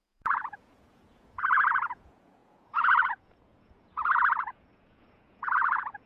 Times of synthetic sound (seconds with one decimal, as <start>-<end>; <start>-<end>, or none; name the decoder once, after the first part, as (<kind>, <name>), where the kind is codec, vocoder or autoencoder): 0.0-6.1 (vocoder, Vocos)